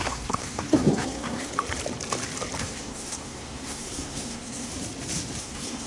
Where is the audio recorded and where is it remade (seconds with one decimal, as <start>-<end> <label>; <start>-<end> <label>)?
0.0-1.5 remade; 1.5-2.6 recorded; 2.6-4.7 remade; 4.7-5.4 recorded; 5.4-5.9 remade